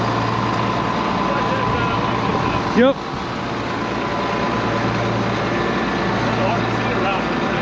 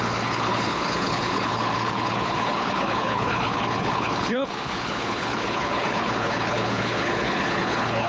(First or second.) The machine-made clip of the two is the second